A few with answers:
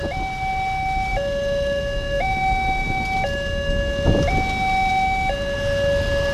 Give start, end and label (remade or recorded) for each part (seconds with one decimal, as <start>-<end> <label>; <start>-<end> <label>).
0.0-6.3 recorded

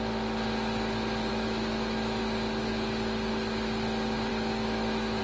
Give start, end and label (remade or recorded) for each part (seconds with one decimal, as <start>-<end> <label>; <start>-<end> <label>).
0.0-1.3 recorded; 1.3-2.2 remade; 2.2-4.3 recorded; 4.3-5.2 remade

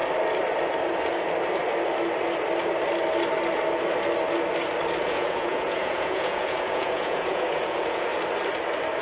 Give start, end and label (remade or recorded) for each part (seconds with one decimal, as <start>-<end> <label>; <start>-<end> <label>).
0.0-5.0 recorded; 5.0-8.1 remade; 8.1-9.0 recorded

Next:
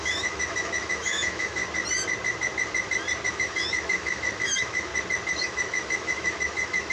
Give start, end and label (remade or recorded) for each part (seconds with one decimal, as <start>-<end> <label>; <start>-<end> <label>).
0.0-1.6 remade; 1.6-3.3 recorded; 3.3-4.9 remade; 4.9-5.4 recorded; 5.4-6.9 remade

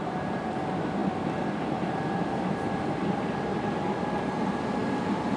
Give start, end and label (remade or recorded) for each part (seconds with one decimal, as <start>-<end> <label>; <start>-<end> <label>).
0.0-5.4 recorded

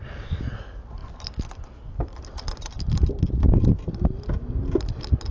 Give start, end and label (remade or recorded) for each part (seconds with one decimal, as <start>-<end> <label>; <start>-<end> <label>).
0.0-5.3 recorded

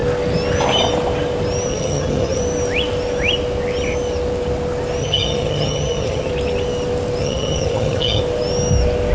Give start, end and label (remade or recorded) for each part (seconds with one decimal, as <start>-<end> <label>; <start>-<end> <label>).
0.0-1.7 recorded; 1.7-2.4 remade; 2.4-5.0 recorded; 5.0-6.3 remade; 6.3-7.2 recorded; 7.2-8.2 remade; 8.2-9.1 recorded